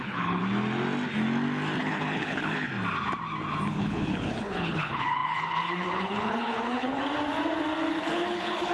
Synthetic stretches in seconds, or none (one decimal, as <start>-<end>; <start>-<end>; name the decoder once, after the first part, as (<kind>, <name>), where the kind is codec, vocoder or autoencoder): 0.0-0.4 (codec, HILCodec); 1.8-2.7; 3.7-7.0; 8.0-8.7